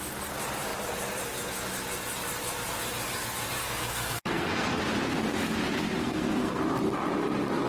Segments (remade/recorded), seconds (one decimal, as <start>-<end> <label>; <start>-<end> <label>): 0.0-3.6 recorded; 3.6-4.8 remade; 4.8-6.0 recorded; 6.0-6.6 remade; 6.6-7.7 recorded